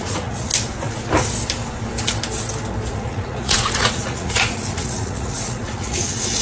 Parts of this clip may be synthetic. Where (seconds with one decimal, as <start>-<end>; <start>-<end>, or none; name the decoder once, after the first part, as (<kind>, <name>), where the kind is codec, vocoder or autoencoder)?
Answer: 0.0-0.5 (vocoder, Vocos); 2.9-6.4